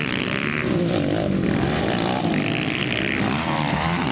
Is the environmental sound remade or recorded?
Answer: remade